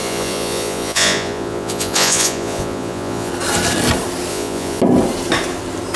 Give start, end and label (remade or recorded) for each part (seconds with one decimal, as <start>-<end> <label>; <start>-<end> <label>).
0.0-3.3 remade; 3.3-4.3 recorded; 4.3-4.8 remade; 4.8-6.0 recorded